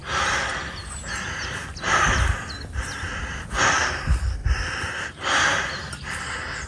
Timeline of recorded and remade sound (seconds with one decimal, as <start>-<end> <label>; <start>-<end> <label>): 0.0-6.7 recorded